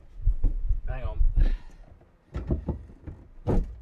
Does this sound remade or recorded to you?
recorded